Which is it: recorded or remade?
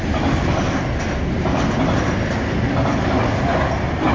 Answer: recorded